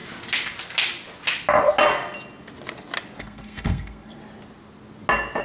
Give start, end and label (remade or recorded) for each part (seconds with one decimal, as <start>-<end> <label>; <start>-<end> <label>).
0.0-3.2 recorded; 3.2-4.2 remade; 4.2-5.4 recorded